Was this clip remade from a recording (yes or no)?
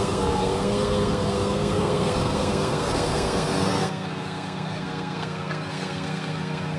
yes